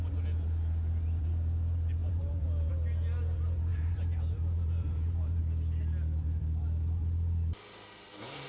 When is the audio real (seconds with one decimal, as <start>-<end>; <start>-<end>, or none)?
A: 0.0-2.0; 2.7-3.7; 5.4-8.5